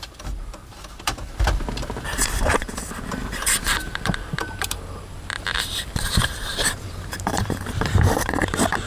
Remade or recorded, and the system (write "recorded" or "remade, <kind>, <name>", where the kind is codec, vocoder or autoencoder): remade, vocoder, BigVGAN v2